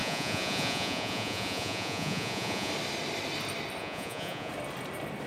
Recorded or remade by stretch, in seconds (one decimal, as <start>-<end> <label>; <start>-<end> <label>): 0.0-2.7 remade; 2.7-3.8 recorded; 3.8-4.5 remade; 4.5-5.3 recorded